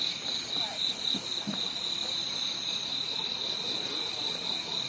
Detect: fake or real real